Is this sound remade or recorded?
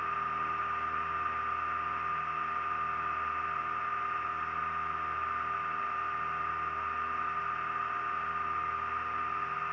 recorded